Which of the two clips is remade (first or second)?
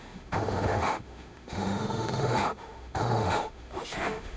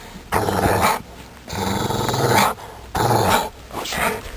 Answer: first